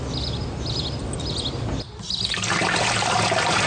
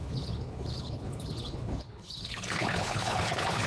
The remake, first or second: second